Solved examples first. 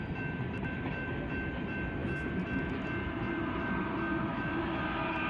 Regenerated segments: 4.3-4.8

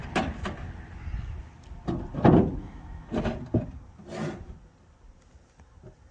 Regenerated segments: 2.6-3.1

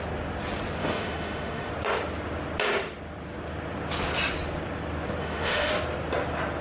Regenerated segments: 0.8-1.7; 5.2-5.7

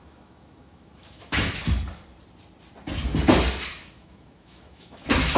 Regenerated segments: 0.0-1.6; 3.7-5.4

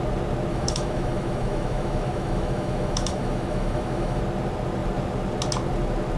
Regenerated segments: 0.5-4.2